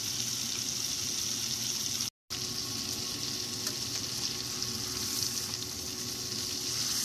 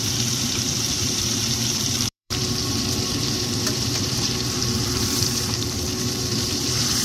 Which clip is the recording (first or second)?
first